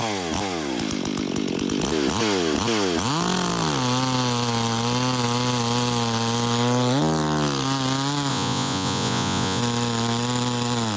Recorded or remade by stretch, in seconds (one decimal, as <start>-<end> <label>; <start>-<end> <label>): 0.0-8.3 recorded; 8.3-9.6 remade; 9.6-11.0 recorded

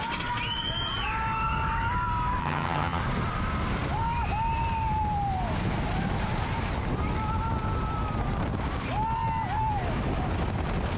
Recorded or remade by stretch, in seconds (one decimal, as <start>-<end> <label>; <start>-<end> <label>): 0.0-2.4 recorded; 2.4-3.0 remade; 3.0-11.0 recorded

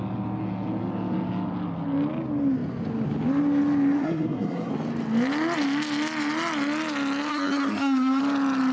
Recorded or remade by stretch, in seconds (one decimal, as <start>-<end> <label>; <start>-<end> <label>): 0.0-4.0 recorded; 4.0-4.7 remade; 4.7-7.3 recorded; 7.3-8.2 remade; 8.2-8.7 recorded

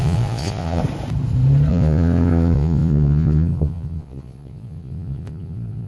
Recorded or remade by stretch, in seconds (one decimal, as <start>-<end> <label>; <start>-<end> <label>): 0.0-0.8 remade; 0.8-1.7 recorded; 1.7-5.9 remade

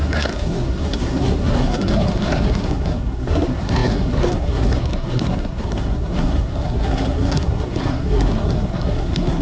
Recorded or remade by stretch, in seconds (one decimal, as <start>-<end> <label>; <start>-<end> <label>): 0.0-9.4 remade

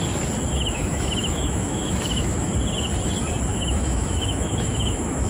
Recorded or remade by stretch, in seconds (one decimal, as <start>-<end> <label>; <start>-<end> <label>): 0.0-0.5 recorded; 0.5-2.5 remade; 2.5-3.5 recorded; 3.5-5.3 remade

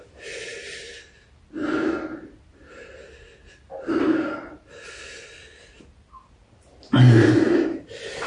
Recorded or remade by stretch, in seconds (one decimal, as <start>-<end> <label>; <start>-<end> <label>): 0.0-8.3 recorded

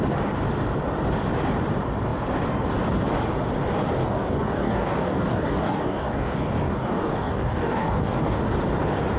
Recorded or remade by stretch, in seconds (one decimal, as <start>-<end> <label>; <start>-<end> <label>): 0.0-4.0 recorded; 4.0-8.4 remade; 8.4-9.2 recorded